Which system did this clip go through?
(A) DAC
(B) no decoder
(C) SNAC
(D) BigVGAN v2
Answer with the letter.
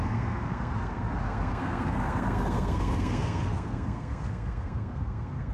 C